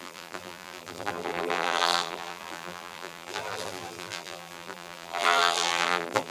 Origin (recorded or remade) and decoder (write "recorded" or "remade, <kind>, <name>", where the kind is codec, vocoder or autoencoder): remade, vocoder, BigVGAN v2